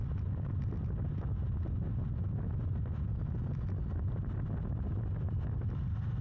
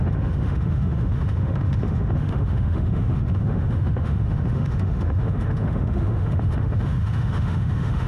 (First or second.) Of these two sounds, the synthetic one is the second